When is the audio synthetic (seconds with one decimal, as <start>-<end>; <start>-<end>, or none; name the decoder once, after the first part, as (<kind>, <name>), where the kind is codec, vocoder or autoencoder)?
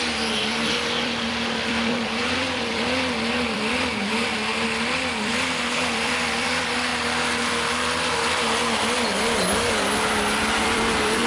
0.0-4.5 (vocoder, BigVGAN v2); 5.0-6.9; 10.6-11.3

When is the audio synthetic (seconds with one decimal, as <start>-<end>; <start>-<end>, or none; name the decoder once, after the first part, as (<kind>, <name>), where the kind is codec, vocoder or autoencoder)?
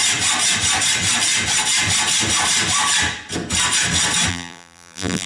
4.3-5.3 (vocoder, BigVGAN v2)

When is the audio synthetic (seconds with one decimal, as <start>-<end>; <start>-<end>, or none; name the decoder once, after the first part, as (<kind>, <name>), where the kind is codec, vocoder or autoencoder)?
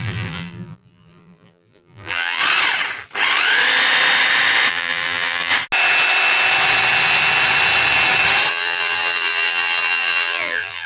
0.0-2.4 (vocoder, BigVGAN v2); 4.7-5.5; 8.5-10.9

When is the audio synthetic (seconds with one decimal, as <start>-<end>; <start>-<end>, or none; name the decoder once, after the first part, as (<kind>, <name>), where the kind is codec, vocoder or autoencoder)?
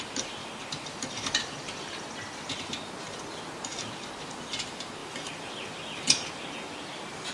0.4-3.9 (vocoder, BigVGAN v2); 5.0-6.3